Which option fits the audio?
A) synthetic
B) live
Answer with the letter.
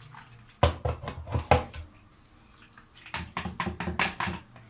B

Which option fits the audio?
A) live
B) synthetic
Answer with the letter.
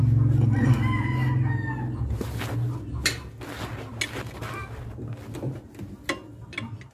A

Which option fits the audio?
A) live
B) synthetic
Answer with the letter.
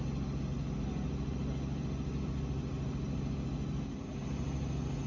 A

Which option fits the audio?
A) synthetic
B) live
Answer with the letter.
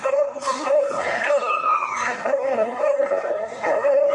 A